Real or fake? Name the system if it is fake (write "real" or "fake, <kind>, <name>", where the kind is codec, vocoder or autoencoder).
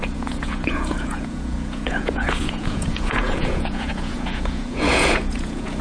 fake, vocoder, Vocos